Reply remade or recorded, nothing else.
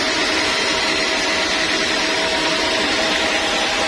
recorded